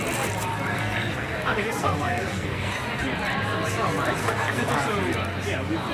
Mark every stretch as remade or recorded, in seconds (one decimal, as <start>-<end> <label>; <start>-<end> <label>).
0.0-0.5 recorded; 0.5-2.7 remade; 2.7-4.2 recorded; 4.2-4.7 remade; 4.7-5.9 recorded